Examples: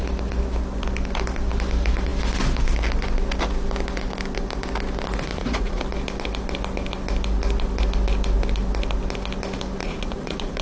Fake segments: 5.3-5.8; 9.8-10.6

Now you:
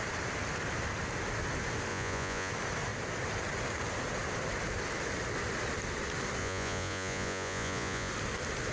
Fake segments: 1.9-2.5; 6.4-8.1

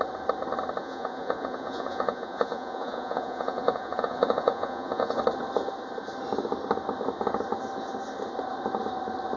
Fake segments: 0.8-5.2

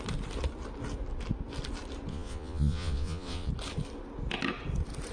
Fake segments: 2.1-3.5

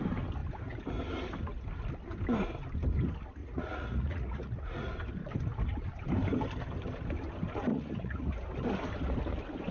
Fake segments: 3.4-4.9; 7.7-8.3

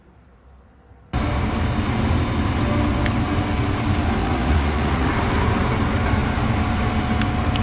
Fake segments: 4.2-5.1

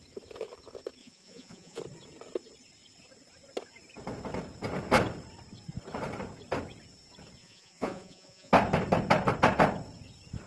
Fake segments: 1.0-1.8; 7.4-8.5

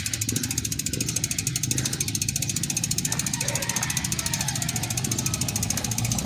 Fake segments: none